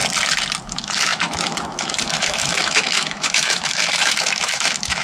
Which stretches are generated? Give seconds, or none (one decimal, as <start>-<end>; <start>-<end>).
0.6-5.0